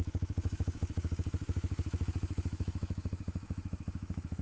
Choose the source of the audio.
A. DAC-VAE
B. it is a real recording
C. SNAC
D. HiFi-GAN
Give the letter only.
A